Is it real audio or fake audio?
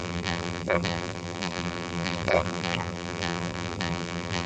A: fake